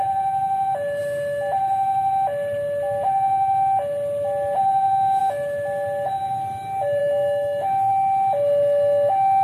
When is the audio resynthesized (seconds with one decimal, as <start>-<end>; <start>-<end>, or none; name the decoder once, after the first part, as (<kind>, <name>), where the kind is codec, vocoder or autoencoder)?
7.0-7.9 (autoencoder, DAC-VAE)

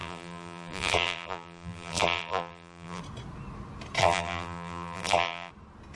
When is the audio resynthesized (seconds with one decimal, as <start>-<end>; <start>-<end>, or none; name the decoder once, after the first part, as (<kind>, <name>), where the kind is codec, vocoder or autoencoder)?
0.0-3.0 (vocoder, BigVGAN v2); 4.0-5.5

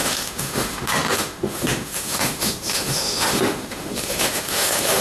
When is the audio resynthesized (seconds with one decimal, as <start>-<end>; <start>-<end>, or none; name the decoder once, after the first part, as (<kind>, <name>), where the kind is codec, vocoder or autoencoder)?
0.0-5.0 (autoencoder, DAC-VAE)

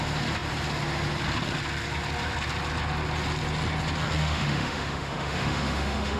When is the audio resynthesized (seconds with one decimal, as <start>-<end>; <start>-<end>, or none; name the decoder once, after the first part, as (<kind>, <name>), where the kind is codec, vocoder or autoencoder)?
4.2-6.2 (autoencoder, DAC-VAE)

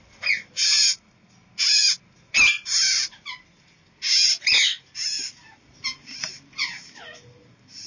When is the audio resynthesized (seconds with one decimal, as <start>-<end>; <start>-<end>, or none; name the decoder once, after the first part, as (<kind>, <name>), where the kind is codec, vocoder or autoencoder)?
none